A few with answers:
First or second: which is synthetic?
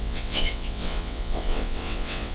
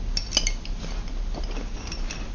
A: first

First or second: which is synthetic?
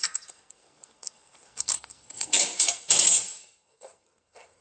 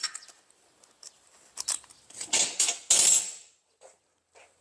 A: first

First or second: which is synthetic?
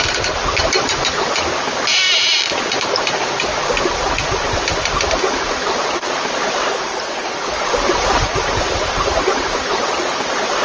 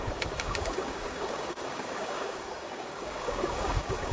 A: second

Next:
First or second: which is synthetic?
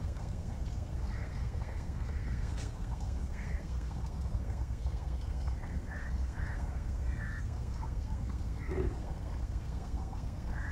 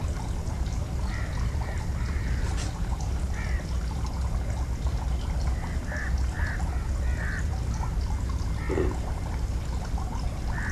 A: first